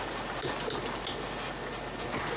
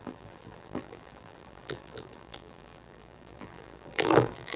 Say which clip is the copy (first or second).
second